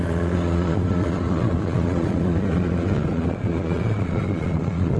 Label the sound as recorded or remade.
remade